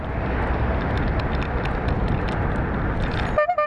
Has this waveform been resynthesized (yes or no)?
no